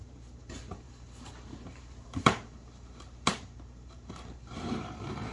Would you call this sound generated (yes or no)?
yes